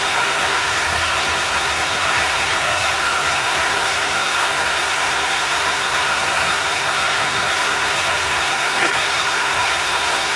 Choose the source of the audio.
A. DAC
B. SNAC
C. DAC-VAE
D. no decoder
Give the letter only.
B